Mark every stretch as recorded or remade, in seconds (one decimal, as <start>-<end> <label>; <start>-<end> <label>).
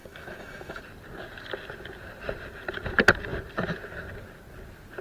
0.0-0.8 remade; 0.8-5.0 recorded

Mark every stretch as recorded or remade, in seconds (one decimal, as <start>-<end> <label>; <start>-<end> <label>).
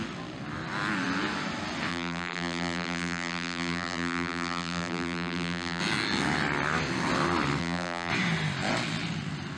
0.0-1.9 recorded; 1.9-5.8 remade; 5.8-7.6 recorded; 7.6-8.1 remade; 8.1-9.6 recorded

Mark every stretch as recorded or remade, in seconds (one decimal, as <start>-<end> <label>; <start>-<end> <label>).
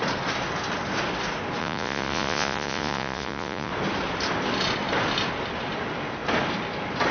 0.0-1.6 recorded; 1.6-3.7 remade; 3.7-7.1 recorded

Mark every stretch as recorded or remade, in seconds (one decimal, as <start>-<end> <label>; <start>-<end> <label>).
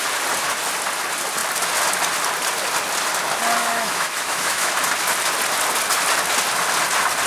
0.0-3.6 recorded; 3.6-4.7 remade; 4.7-7.3 recorded